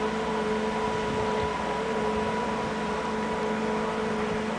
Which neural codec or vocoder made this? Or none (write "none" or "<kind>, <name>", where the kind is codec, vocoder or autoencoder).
none